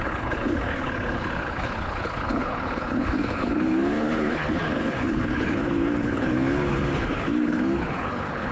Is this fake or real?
fake